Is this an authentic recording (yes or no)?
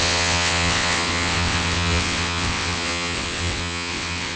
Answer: no